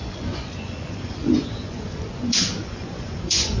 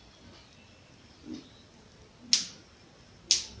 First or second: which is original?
second